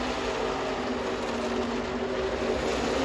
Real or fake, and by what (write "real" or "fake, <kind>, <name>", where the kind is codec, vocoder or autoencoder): real